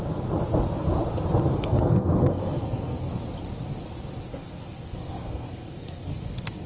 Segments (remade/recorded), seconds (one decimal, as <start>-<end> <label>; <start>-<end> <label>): 0.0-1.5 recorded; 1.5-3.1 remade; 3.1-4.3 recorded; 4.3-6.7 remade